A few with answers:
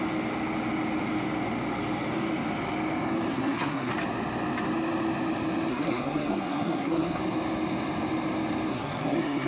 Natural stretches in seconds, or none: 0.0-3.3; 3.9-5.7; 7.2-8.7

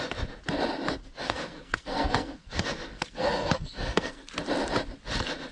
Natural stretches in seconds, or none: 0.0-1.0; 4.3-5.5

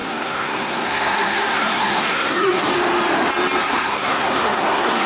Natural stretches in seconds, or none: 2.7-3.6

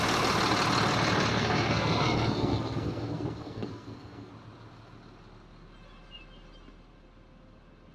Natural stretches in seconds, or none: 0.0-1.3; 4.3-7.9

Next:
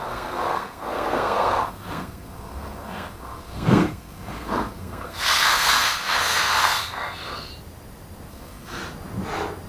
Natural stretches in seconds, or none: 7.5-8.3; 8.8-9.7

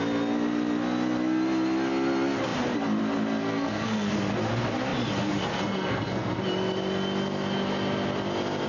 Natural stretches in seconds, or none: 0.0-3.4; 4.1-5.5; 6.4-8.7

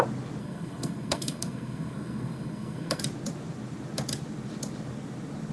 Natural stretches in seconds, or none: 0.0-0.4; 3.0-5.5

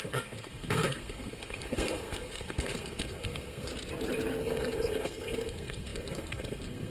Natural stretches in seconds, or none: 3.7-4.4